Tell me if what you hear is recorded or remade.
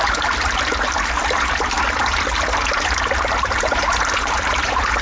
remade